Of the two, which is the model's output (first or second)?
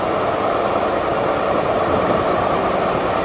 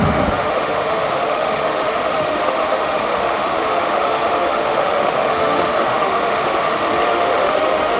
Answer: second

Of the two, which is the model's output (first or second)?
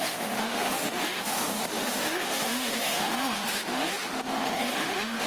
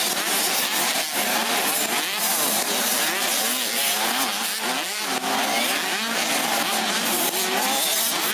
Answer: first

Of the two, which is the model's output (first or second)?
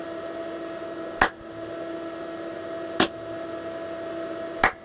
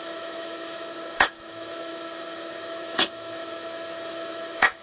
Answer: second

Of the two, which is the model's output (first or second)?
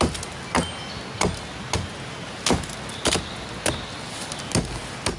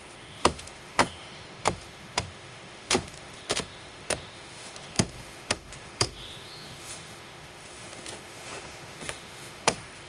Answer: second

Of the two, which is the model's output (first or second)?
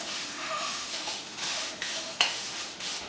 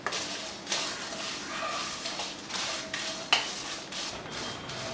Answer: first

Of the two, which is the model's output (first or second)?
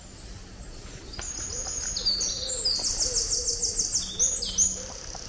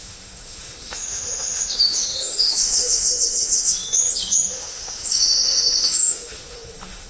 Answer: second